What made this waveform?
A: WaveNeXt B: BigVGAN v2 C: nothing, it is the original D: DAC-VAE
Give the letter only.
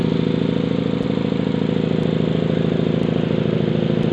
C